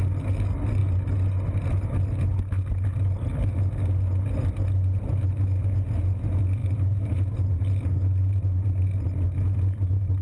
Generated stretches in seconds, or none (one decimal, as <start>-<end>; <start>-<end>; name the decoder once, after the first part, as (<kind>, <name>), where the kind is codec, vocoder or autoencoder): 6.6-7.6 (vocoder, BigVGAN v2)